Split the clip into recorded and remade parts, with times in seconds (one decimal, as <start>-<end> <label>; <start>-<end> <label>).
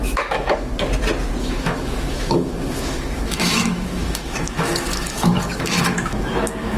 0.0-0.7 remade; 0.7-1.4 recorded; 1.4-6.8 remade